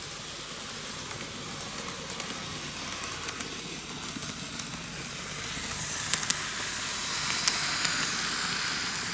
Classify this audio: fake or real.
real